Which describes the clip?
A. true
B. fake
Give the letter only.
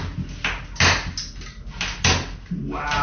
A